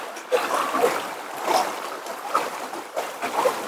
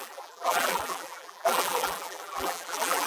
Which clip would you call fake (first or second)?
second